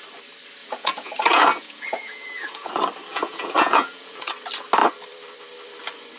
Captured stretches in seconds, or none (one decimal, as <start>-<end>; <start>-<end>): 0.0-0.6; 2.7-3.1; 4.3-6.2